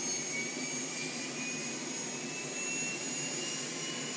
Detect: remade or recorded recorded